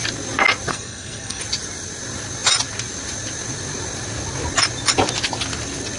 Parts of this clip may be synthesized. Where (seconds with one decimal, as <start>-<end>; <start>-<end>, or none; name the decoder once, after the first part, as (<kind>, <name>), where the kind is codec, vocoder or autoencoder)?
0.7-1.4 (codec, SNAC)